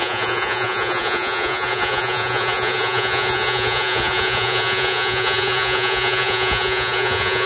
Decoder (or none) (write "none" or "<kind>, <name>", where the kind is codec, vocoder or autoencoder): vocoder, Vocos